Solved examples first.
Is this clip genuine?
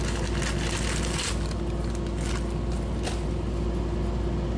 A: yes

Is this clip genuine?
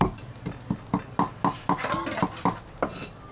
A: yes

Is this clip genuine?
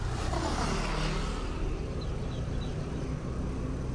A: yes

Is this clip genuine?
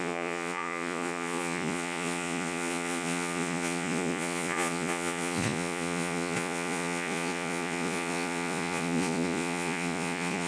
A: no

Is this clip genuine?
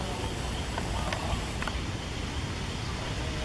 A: yes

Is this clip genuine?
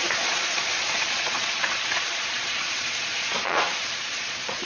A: no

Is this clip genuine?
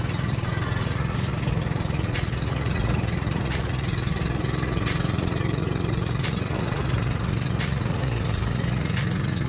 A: no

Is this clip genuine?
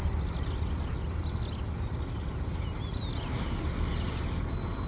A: yes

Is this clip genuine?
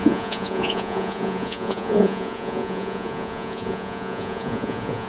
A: no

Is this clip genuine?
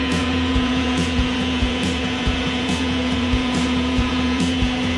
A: no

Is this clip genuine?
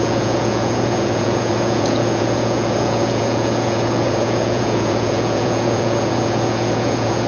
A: no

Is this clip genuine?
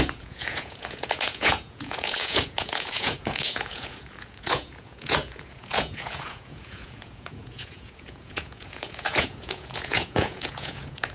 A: no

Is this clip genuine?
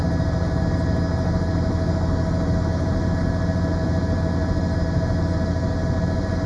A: yes